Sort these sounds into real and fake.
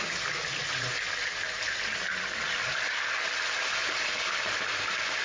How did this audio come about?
real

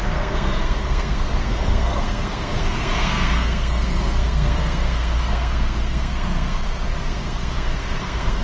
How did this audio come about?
fake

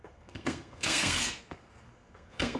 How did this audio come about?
fake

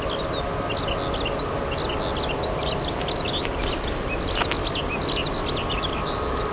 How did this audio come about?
real